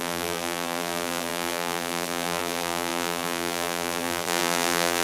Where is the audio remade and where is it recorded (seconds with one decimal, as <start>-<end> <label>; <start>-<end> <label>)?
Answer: 0.0-5.0 remade